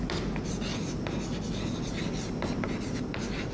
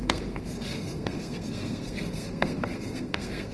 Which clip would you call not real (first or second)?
second